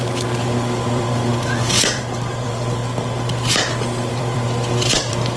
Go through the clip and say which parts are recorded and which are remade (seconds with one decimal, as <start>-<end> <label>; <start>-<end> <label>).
0.0-2.8 remade; 2.8-4.1 recorded; 4.1-5.4 remade